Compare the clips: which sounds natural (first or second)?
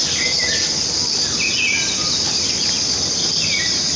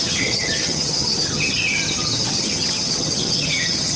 first